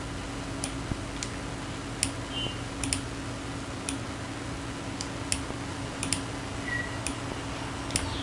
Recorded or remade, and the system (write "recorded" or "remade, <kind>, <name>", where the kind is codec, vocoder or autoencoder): recorded